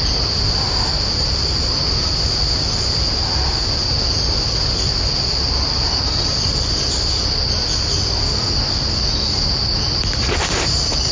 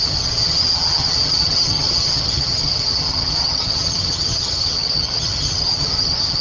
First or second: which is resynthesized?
second